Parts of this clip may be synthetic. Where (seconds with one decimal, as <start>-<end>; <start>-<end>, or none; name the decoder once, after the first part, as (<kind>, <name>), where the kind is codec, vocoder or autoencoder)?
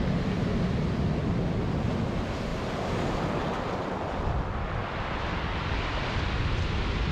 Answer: none